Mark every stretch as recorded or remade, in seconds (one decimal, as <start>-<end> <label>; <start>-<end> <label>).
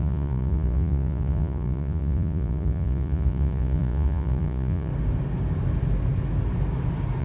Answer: 0.0-4.9 remade; 4.9-7.2 recorded